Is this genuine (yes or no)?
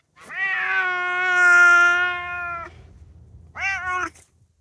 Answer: yes